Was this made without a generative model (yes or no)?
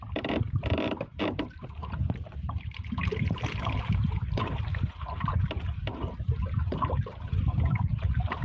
no